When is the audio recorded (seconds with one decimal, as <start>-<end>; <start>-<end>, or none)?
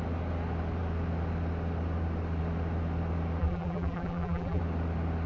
0.0-3.4; 4.6-5.3